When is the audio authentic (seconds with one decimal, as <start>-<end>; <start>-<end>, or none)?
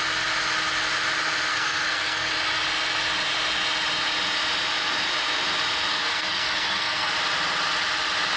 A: 0.0-1.5; 2.3-5.9; 7.1-8.4